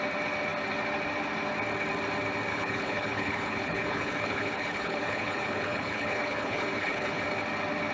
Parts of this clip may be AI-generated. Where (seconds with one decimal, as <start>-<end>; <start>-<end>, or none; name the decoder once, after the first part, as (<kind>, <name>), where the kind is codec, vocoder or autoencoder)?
2.5-7.2 (codec, HILCodec)